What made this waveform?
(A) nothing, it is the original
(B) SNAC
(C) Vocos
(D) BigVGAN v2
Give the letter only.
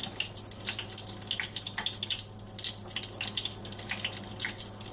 A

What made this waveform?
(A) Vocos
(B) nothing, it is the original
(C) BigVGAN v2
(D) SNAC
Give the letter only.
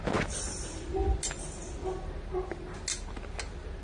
B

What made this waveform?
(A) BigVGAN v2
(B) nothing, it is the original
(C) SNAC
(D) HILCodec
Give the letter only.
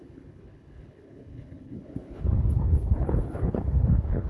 D